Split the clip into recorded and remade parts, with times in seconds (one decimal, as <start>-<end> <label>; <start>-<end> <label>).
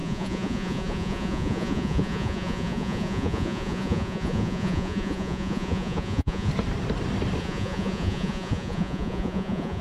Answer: 0.0-6.5 remade; 6.5-7.4 recorded; 7.4-9.8 remade